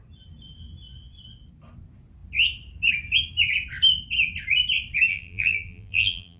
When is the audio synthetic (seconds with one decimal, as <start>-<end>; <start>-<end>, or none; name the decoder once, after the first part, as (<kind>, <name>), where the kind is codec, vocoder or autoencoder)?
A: 5.1-6.4 (vocoder, BigVGAN v2)